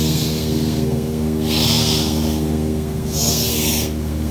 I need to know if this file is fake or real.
fake